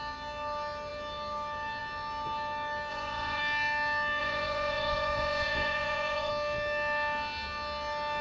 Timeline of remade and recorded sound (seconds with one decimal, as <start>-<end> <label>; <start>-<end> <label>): 0.0-2.9 recorded; 2.9-3.4 remade; 3.4-4.2 recorded; 4.2-6.3 remade; 6.3-8.2 recorded